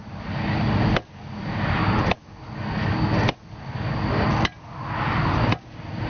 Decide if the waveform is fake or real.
real